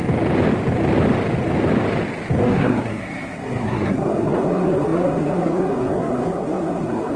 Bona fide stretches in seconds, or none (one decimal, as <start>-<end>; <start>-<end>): 0.0-2.4